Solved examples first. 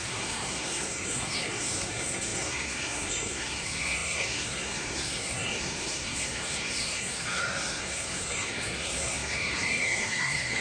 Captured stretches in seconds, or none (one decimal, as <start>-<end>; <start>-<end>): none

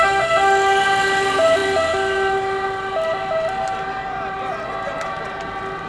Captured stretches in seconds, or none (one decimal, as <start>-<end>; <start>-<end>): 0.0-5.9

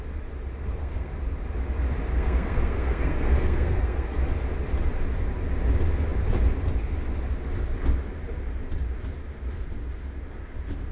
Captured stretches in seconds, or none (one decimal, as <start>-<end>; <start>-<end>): 0.0-0.7; 1.2-2.1; 4.2-10.9

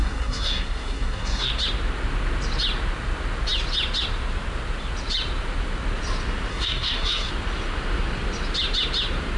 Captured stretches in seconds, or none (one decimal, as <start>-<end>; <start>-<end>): 1.5-6.5; 7.3-9.4